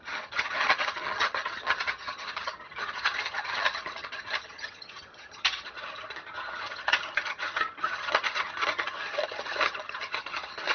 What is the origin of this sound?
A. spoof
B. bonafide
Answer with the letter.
A